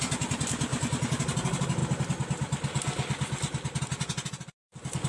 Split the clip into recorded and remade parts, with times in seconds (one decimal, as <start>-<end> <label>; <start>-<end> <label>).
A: 0.0-0.7 recorded; 0.7-1.2 remade; 1.2-5.1 recorded